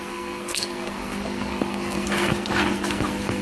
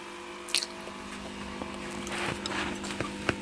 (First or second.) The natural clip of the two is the second